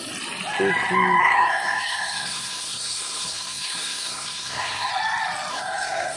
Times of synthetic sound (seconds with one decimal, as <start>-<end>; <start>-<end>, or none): 1.2-4.9; 5.5-6.2